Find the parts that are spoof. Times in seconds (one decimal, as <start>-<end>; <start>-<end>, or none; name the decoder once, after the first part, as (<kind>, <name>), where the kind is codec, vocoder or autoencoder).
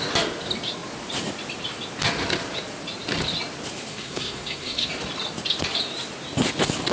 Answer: 3.9-4.9 (codec, SNAC)